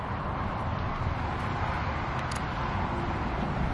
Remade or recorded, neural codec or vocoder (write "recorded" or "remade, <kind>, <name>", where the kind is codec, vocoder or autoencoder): recorded